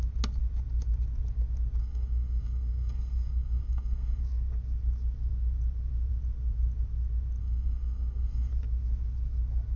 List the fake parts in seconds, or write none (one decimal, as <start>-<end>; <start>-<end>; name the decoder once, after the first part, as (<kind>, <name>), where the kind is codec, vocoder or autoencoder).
1.8-4.2 (codec, SNAC); 7.4-8.5